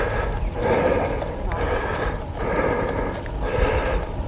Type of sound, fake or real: real